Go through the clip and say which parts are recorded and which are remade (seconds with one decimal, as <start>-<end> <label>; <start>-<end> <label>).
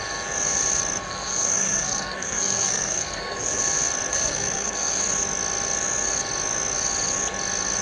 0.0-1.0 recorded; 1.0-3.6 remade; 3.6-4.1 recorded; 4.1-5.0 remade; 5.0-7.8 recorded